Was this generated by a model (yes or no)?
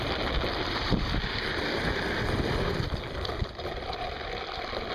no